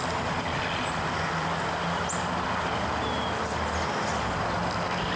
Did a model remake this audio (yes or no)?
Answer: no